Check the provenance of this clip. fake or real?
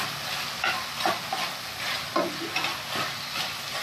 real